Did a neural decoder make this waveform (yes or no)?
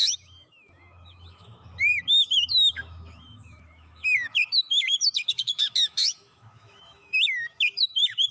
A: yes